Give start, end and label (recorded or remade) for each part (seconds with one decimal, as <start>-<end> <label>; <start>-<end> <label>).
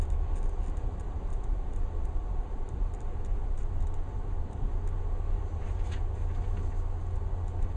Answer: 0.0-1.3 recorded; 1.3-4.7 remade; 4.7-7.8 recorded